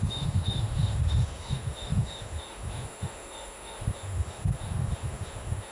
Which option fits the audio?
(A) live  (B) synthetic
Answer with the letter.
B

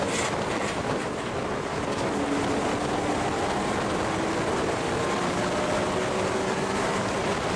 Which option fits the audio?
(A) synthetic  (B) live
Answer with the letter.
B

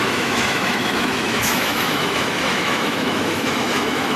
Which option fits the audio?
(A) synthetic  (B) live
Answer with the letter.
A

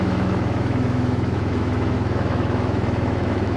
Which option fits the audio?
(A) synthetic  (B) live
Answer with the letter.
A